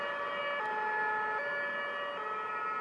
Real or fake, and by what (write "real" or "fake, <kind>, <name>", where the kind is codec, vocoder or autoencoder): real